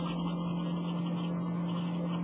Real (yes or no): yes